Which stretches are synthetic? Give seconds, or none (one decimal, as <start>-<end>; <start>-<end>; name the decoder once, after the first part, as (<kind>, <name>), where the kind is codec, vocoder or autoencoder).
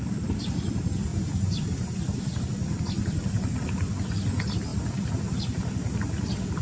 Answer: 1.1-2.4 (vocoder, BigVGAN v2); 4.7-5.4